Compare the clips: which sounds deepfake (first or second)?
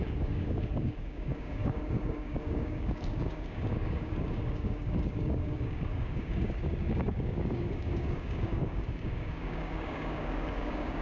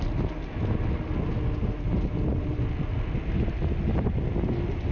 first